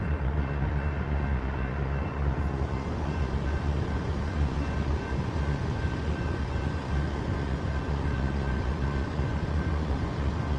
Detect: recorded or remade remade